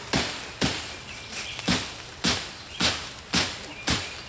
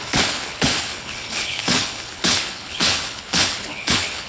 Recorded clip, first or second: first